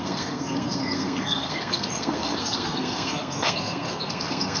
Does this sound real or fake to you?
fake